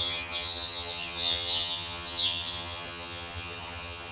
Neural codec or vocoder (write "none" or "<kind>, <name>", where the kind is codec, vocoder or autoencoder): vocoder, HiFi-GAN